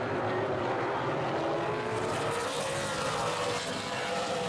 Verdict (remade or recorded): recorded